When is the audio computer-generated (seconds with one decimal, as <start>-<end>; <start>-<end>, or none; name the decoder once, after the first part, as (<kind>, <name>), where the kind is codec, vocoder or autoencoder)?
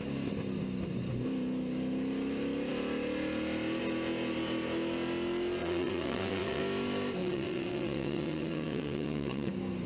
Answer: 5.6-6.6 (vocoder, WaveNeXt); 7.2-9.5